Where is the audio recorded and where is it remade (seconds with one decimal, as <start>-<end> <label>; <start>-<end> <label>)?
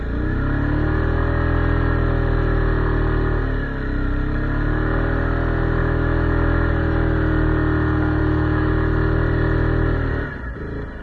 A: 0.0-5.8 recorded; 5.8-6.7 remade; 6.7-8.2 recorded; 8.2-8.7 remade; 8.7-11.0 recorded